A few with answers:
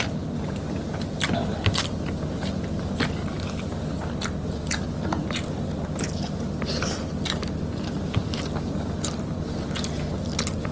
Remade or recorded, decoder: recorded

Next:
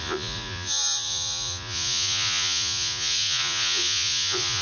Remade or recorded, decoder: remade, vocoder, Vocos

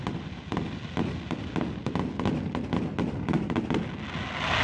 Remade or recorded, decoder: recorded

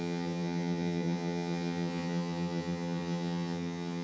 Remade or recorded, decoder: remade, vocoder, HiFi-GAN